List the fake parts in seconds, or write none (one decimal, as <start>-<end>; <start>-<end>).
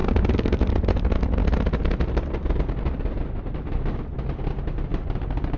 0.0-0.6